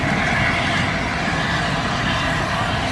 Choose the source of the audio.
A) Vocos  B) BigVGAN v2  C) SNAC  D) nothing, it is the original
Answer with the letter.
D